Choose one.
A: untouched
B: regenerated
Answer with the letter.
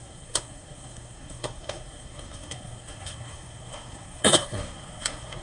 B